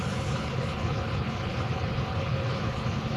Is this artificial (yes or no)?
yes